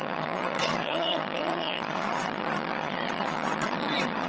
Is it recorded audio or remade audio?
remade